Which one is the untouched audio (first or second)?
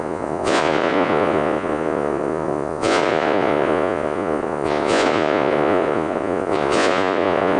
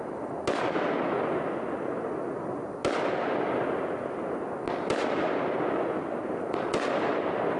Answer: second